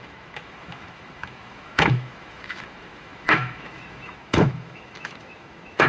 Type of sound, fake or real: fake